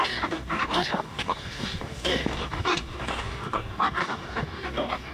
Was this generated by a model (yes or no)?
yes